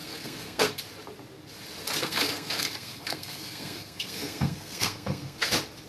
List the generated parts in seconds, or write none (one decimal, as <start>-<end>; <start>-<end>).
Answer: 0.0-0.8; 2.0-5.5